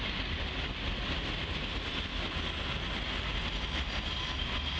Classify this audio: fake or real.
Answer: real